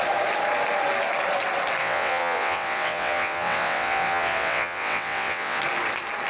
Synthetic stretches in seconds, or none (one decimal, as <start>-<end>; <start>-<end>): 1.8-5.6

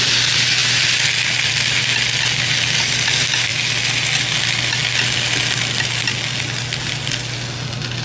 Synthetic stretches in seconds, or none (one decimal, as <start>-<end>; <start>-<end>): none

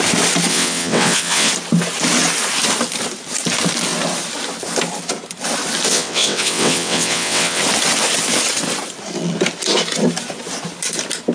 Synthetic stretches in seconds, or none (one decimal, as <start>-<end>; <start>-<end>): 0.5-1.5; 5.9-7.6

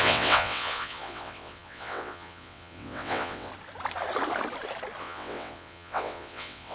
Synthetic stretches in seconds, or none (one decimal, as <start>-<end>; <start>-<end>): 0.0-3.5; 5.0-6.7

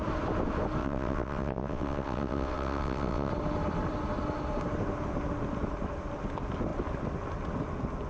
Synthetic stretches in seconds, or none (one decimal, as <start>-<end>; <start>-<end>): 0.8-3.3